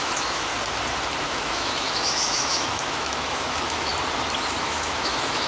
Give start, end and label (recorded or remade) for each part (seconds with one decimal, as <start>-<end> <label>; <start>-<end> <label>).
0.0-0.5 remade; 0.5-1.2 recorded; 1.2-3.9 remade; 3.9-4.6 recorded; 4.6-5.5 remade